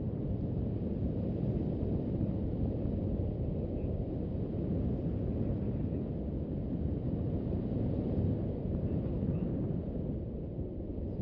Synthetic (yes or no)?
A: no